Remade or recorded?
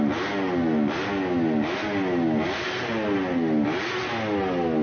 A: recorded